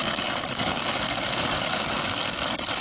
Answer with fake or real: real